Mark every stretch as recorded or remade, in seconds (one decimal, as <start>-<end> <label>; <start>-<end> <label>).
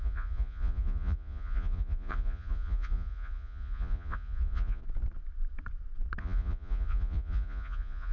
0.0-4.8 remade; 4.8-6.2 recorded; 6.2-8.1 remade